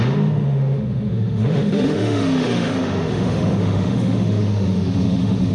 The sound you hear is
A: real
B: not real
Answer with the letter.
B